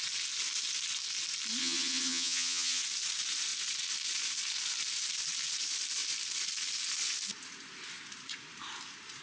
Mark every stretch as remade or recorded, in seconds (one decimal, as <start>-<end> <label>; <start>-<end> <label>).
0.0-1.6 recorded; 1.6-2.8 remade; 2.8-9.2 recorded